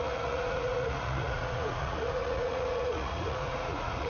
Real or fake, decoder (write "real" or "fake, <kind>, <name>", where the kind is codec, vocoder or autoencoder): fake, vocoder, Vocos